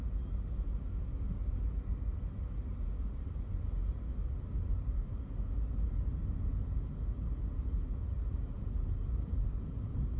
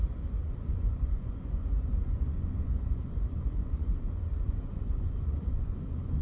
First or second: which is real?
first